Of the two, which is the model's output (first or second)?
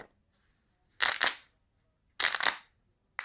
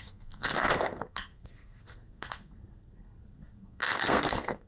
second